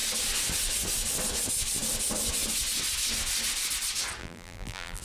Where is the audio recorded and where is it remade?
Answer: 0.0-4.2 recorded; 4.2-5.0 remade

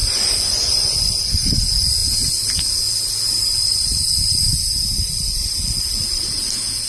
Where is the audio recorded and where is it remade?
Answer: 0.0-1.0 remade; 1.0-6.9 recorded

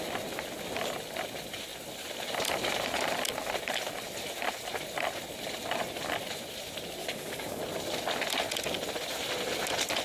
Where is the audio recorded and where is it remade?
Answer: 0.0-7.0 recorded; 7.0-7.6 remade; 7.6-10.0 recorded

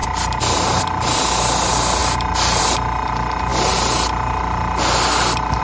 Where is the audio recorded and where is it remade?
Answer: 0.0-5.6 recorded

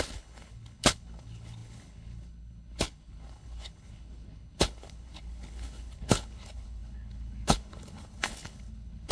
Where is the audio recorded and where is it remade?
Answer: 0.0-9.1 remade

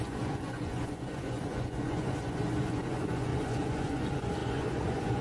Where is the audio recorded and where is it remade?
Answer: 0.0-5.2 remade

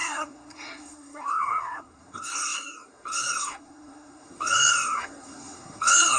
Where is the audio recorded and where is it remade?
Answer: 0.0-6.2 remade